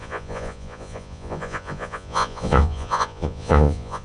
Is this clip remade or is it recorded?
remade